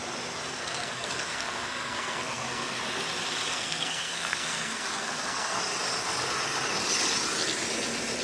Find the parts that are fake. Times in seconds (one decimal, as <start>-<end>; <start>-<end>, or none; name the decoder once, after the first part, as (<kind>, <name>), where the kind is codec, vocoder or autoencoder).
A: 0.6-2.8 (codec, SNAC); 3.5-5.6